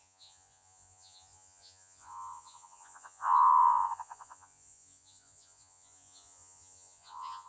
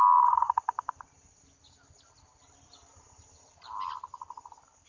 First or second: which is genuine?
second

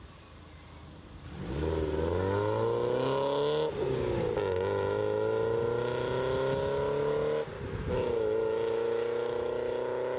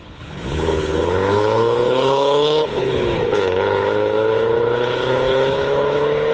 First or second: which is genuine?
first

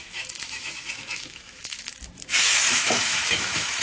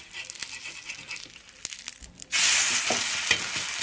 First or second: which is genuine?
second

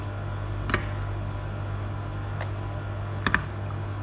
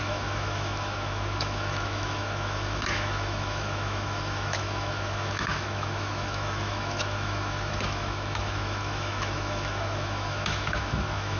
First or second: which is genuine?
first